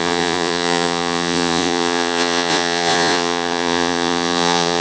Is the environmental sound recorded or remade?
remade